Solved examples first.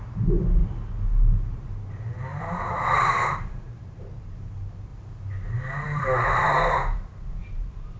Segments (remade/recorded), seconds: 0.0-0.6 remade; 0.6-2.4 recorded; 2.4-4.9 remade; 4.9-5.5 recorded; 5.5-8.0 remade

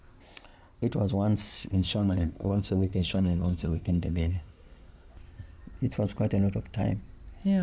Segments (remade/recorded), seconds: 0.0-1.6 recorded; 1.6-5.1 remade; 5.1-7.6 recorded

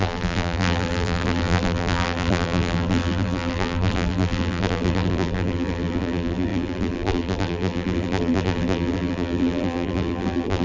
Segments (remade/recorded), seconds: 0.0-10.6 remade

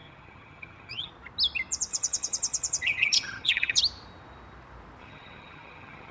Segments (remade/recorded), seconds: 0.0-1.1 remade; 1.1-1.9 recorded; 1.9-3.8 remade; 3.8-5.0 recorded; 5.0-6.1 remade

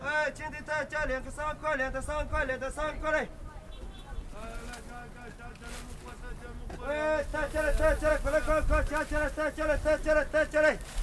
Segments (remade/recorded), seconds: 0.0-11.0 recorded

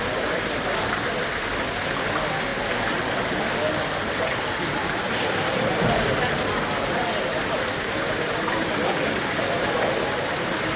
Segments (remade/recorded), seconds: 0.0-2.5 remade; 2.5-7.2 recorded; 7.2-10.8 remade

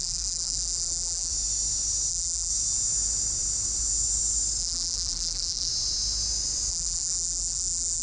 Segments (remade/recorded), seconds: 0.0-1.3 remade; 1.3-2.1 recorded; 2.1-2.5 remade; 2.5-4.6 recorded; 4.6-5.7 remade; 5.7-6.7 recorded; 6.7-8.0 remade